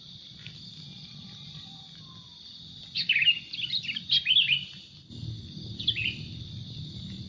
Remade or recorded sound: recorded